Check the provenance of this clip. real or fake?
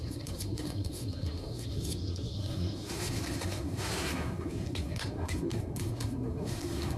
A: fake